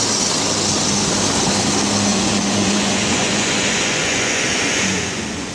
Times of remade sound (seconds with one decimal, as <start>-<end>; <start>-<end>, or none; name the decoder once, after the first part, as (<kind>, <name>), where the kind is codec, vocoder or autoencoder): 2.1-5.5 (vocoder, Vocos)